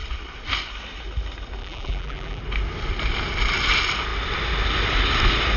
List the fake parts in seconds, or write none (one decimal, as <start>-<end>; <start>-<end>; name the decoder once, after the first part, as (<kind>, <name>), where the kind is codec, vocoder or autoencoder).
1.6-2.4 (vocoder, BigVGAN v2)